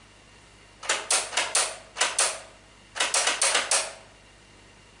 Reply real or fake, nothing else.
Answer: real